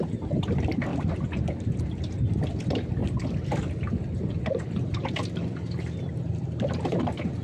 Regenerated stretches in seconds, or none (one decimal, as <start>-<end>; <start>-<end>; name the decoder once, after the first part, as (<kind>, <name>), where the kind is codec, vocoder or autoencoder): 0.0-0.9 (vocoder, BigVGAN v2); 2.5-3.0; 4.3-7.4